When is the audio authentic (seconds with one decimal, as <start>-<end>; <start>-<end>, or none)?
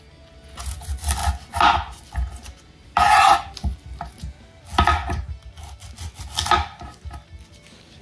0.0-8.0